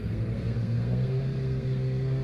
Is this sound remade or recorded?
remade